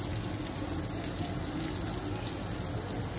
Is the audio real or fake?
real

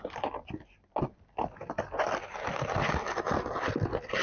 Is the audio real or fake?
real